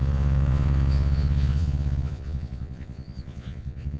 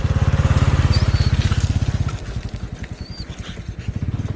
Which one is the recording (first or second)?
second